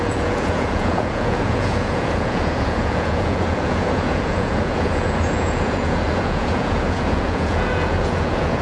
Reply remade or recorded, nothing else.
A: remade